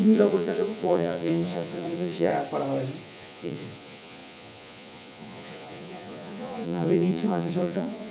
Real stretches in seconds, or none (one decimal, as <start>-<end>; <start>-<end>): 2.3-3.0